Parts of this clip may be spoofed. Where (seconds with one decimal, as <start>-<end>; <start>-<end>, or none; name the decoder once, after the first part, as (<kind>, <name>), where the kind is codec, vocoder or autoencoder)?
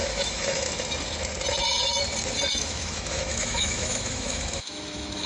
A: 0.0-0.7 (autoencoder, DAC-VAE); 2.5-5.3